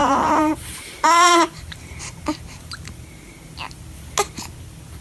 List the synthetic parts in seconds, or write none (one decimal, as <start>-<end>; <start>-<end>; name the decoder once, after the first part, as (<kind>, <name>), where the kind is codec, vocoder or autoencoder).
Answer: 0.0-3.0 (vocoder, BigVGAN v2)